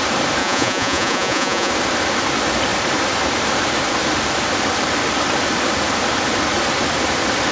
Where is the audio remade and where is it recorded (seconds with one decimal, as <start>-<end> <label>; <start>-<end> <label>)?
0.0-0.4 recorded; 0.4-1.7 remade; 1.7-7.5 recorded